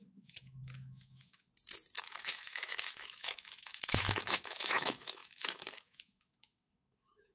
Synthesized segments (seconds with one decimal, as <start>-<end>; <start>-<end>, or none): 0.0-1.5; 2.0-7.3